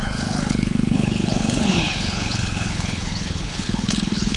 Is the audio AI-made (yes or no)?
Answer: yes